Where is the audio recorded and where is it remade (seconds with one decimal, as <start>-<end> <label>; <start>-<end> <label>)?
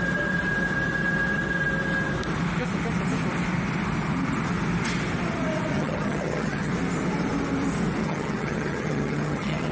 0.0-5.7 recorded; 5.7-6.7 remade; 6.7-8.0 recorded; 8.0-9.7 remade